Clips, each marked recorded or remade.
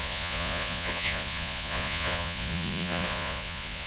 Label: remade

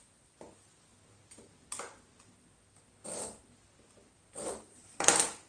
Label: recorded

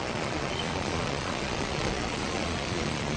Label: remade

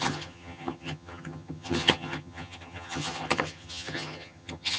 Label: remade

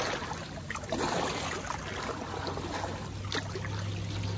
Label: recorded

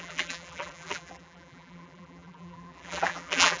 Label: remade